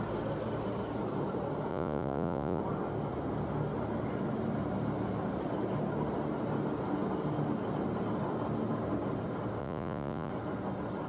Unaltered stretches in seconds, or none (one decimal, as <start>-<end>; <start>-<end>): 0.0-1.7; 2.6-9.6; 10.3-11.1